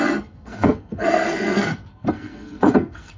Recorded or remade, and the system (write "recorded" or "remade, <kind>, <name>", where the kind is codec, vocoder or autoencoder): remade, codec, SNAC